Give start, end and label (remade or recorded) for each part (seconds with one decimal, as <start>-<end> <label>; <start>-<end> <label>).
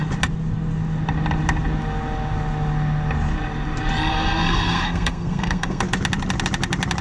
0.0-4.1 recorded; 4.1-5.8 remade; 5.8-7.0 recorded